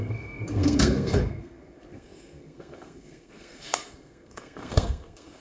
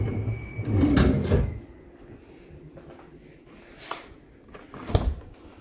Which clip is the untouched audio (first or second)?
second